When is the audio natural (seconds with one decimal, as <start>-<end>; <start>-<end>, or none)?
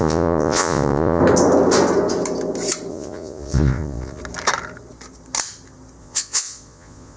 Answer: 1.2-2.9; 4.2-6.0